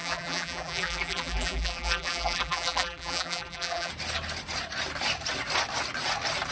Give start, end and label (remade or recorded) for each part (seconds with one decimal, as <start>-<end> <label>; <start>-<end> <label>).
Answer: 0.0-3.9 remade; 3.9-6.5 recorded